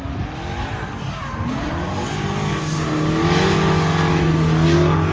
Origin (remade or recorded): recorded